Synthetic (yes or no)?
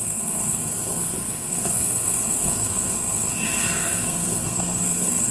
yes